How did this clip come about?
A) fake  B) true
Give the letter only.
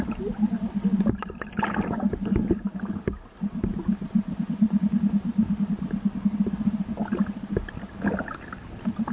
B